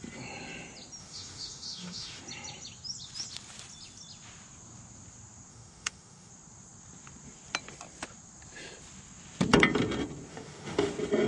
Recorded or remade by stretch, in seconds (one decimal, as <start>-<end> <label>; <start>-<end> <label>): 0.0-1.0 recorded; 1.0-2.2 remade; 2.2-5.5 recorded; 5.5-6.3 remade; 6.3-10.3 recorded; 10.3-10.9 remade; 10.9-11.3 recorded